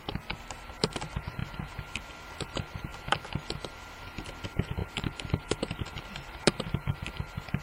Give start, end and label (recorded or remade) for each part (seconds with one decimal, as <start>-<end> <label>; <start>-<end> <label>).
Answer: 0.0-7.6 recorded